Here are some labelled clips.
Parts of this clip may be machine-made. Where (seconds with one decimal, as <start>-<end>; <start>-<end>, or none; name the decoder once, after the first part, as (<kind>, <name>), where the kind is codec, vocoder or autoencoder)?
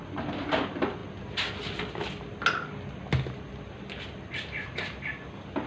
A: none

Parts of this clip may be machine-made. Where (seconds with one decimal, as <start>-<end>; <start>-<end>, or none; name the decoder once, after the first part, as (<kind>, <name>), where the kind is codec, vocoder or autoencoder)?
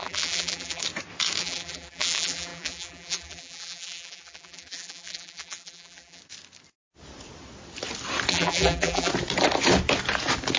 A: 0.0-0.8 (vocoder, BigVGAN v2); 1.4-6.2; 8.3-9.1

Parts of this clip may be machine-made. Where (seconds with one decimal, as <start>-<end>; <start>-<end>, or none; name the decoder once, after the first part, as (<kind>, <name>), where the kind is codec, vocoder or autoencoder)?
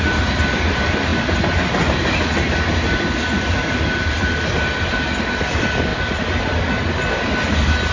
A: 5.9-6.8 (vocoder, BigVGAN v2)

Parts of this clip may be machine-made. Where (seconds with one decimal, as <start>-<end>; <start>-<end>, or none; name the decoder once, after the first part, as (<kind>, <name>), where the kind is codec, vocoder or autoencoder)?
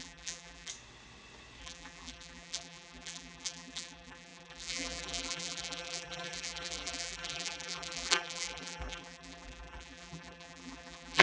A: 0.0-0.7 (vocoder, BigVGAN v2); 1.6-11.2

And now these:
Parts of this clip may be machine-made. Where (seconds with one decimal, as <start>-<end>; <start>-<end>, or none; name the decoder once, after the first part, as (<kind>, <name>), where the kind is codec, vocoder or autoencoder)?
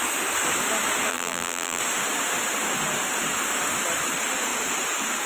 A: 1.1-1.8 (vocoder, BigVGAN v2)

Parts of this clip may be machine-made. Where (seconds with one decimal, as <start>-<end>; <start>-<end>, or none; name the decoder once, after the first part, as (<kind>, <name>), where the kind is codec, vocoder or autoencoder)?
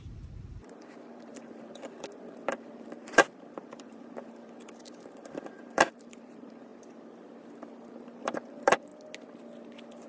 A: 0.0-6.7 (vocoder, BigVGAN v2); 7.9-8.9; 9.7-10.1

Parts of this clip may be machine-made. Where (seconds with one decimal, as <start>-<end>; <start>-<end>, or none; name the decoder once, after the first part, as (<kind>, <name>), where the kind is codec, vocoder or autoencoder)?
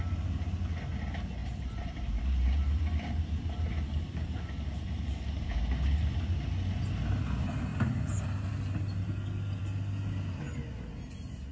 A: 1.4-5.5 (vocoder, BigVGAN v2)